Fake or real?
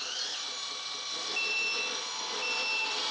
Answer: real